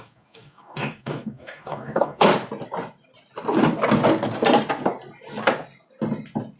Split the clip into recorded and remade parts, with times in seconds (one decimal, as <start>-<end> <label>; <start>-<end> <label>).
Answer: 0.0-2.3 remade; 2.3-6.6 recorded